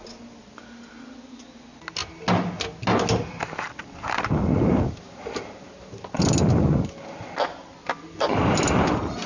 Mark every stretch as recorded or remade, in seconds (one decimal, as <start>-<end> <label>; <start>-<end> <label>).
0.0-9.3 recorded